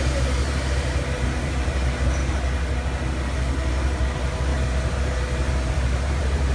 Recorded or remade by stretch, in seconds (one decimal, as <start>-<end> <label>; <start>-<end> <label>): 0.0-2.2 remade; 2.2-3.7 recorded; 3.7-6.5 remade